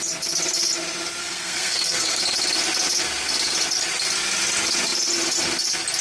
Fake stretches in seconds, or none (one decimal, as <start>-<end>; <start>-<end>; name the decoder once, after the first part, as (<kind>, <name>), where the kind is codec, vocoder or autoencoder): 1.2-2.2 (codec, SNAC)